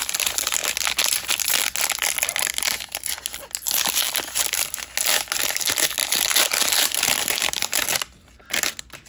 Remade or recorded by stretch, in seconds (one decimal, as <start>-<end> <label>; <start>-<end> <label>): 0.0-9.1 recorded